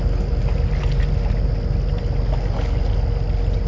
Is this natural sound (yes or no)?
yes